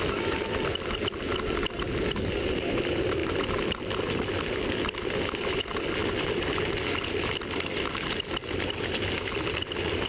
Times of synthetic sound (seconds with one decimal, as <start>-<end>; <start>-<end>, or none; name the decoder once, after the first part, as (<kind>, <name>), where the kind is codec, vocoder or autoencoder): none